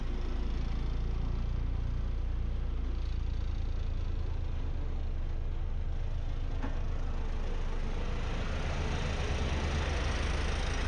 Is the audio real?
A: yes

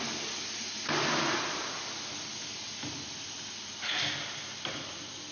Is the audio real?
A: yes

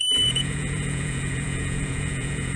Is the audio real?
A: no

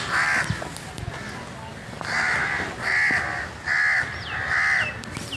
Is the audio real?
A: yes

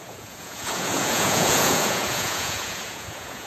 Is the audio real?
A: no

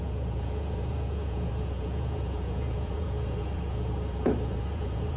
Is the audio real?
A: no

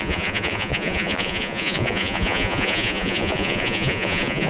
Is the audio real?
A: no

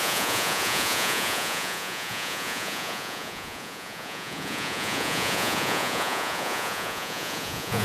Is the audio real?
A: no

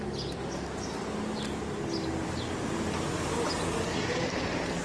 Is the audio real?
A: yes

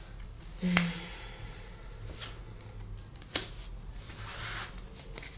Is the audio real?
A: yes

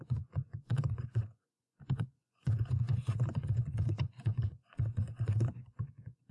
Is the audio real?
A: no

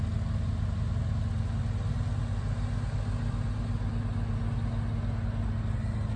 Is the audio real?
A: yes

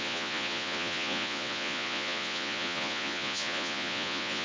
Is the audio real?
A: no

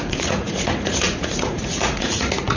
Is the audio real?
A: no